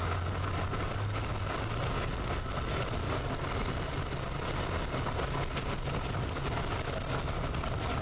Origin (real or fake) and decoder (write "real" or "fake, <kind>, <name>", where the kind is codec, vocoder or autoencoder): real